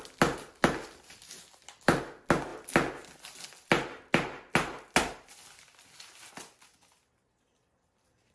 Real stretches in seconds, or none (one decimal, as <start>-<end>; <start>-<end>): 0.0-8.3